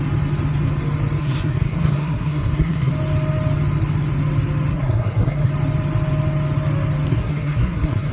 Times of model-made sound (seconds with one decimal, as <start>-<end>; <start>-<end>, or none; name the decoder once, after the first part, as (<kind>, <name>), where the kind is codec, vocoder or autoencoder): 1.2-2.9 (codec, SNAC); 4.7-5.5; 7.1-8.1